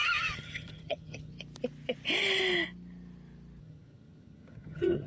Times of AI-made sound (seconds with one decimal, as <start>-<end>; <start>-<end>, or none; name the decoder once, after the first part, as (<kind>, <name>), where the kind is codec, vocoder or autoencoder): 0.0-1.3 (vocoder, HiFi-GAN); 3.6-5.1